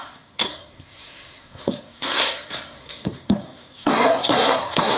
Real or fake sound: fake